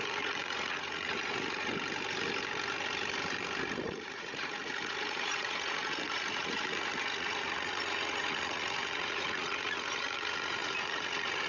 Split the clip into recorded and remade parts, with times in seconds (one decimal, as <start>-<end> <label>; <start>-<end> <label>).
0.0-1.7 remade; 1.7-3.8 recorded; 3.8-11.5 remade